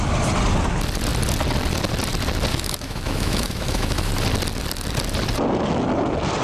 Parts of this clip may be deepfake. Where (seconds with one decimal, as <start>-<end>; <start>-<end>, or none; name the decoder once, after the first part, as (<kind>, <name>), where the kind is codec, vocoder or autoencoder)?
2.5-4.1 (autoencoder, DAC-VAE)